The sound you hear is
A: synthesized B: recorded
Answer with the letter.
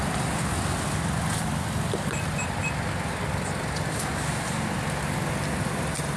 B